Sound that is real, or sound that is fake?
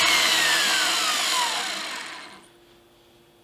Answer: real